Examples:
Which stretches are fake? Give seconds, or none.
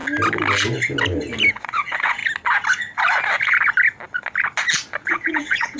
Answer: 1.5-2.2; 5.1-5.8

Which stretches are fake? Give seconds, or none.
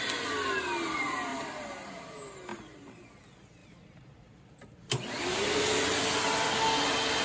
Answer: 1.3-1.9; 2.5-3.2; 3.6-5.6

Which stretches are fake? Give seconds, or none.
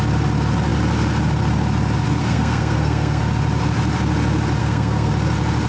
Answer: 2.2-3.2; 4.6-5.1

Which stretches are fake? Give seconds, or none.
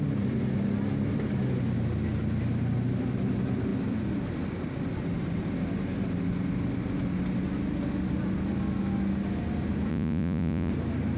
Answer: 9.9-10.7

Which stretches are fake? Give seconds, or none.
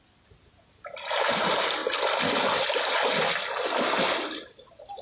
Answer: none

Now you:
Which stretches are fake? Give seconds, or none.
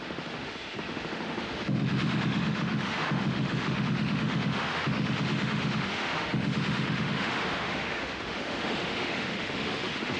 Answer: 0.0-10.2